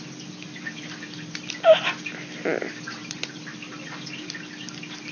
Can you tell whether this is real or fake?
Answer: real